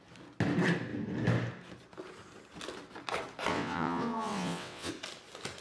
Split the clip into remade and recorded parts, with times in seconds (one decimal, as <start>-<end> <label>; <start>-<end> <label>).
0.0-3.5 recorded; 3.5-4.9 remade; 4.9-5.6 recorded